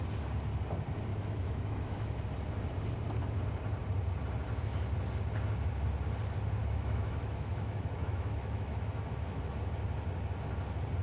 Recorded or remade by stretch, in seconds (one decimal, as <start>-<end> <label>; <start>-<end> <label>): 0.0-1.1 recorded; 1.1-2.2 remade; 2.2-6.6 recorded; 6.6-9.4 remade; 9.4-11.0 recorded